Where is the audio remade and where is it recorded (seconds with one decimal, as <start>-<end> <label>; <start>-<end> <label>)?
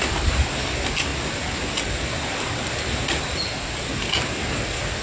0.0-5.0 recorded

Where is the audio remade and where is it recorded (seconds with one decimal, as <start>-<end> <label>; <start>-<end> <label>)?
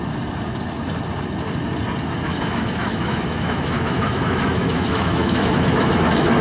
0.0-2.3 recorded; 2.3-6.4 remade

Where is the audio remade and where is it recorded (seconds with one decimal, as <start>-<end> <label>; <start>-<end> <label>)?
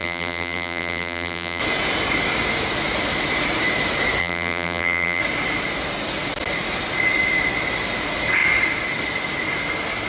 0.0-1.6 remade; 1.6-4.2 recorded; 4.2-5.2 remade; 5.2-10.1 recorded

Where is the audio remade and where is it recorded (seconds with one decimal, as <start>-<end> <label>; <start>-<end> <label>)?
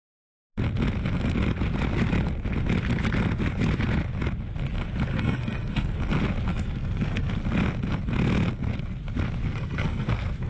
0.0-5.1 recorded; 5.1-6.0 remade; 6.0-6.5 recorded; 6.5-7.3 remade; 7.3-9.4 recorded; 9.4-10.5 remade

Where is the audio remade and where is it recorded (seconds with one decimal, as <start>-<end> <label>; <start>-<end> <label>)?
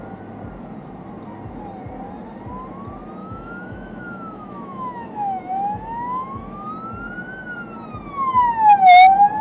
0.0-3.2 recorded; 3.2-6.7 remade; 6.7-9.4 recorded